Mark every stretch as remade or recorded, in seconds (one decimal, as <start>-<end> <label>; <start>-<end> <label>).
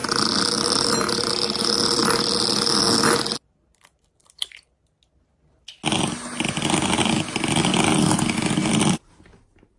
0.0-9.8 recorded